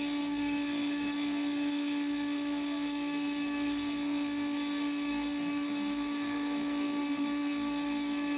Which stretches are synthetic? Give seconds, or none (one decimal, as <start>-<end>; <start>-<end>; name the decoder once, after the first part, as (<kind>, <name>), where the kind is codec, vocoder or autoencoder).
0.0-8.4 (codec, SNAC)